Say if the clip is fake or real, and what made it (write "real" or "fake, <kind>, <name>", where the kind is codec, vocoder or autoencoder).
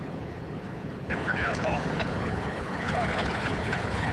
fake, codec, HILCodec